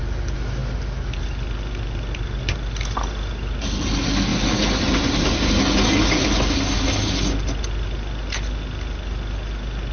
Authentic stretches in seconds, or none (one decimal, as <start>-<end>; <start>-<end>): 0.0-4.3; 5.6-9.9